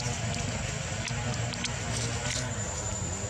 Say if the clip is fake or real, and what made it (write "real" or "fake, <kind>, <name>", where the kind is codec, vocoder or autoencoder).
real